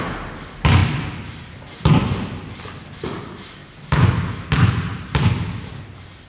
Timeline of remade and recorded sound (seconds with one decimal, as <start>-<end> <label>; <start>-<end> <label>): 0.0-6.3 recorded